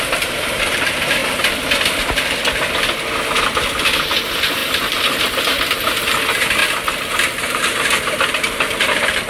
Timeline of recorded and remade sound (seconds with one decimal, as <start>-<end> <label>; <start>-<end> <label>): 0.0-1.2 remade; 1.2-3.8 recorded; 3.8-6.6 remade; 6.6-7.5 recorded; 7.5-9.3 remade

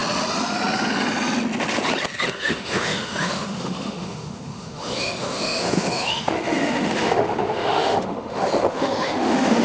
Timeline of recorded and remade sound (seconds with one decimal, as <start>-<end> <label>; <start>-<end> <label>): 0.0-2.3 recorded; 2.3-9.6 remade

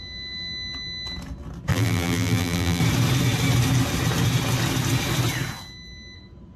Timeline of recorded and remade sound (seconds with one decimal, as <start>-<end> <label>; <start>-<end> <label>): 0.0-1.7 recorded; 1.7-2.8 remade; 2.8-6.6 recorded

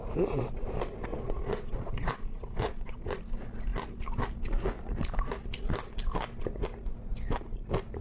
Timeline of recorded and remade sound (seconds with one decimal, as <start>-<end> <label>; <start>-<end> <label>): 0.0-1.1 recorded; 1.1-3.2 remade; 3.2-8.0 recorded

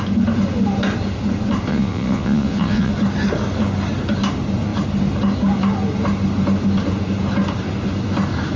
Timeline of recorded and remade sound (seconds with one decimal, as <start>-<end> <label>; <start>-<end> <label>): 0.0-1.7 recorded; 1.7-2.9 remade; 2.9-8.6 recorded

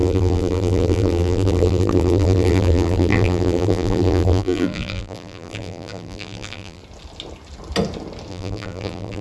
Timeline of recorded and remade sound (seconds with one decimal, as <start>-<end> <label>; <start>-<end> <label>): 0.0-6.8 remade; 6.8-8.3 recorded; 8.3-9.2 remade

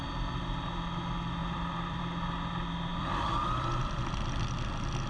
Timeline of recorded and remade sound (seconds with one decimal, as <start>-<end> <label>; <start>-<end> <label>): 0.0-1.4 recorded; 1.4-2.0 remade; 2.0-2.9 recorded; 2.9-4.5 remade; 4.5-5.1 recorded

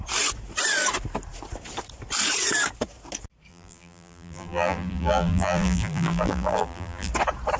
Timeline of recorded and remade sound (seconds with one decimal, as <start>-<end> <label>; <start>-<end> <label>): 0.0-3.5 recorded; 3.5-7.1 remade; 7.1-7.6 recorded